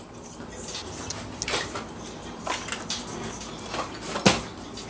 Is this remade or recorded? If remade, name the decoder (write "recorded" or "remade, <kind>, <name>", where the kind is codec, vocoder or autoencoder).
recorded